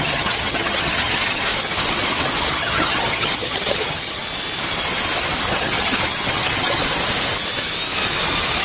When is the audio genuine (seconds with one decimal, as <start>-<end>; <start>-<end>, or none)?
1.5-2.5; 4.2-5.5; 6.8-8.6